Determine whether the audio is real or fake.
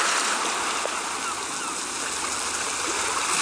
real